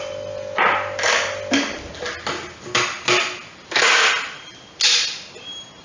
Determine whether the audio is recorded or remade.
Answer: recorded